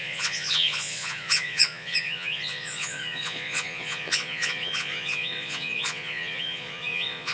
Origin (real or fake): fake